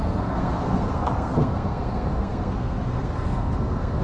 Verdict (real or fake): fake